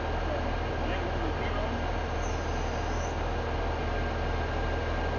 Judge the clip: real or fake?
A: real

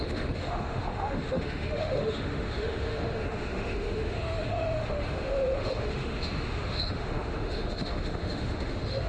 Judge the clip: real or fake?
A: fake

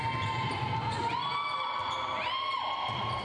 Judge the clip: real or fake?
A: real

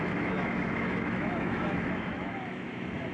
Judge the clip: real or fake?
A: fake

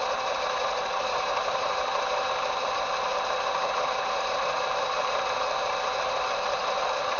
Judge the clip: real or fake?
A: fake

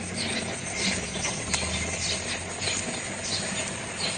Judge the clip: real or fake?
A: real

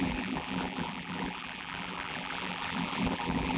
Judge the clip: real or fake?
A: fake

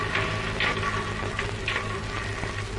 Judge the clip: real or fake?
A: real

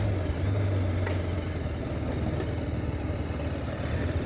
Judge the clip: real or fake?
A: real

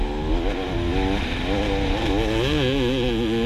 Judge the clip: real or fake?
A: real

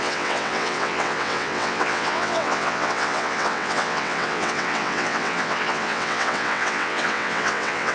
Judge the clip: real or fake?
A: fake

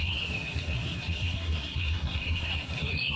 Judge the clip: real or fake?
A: fake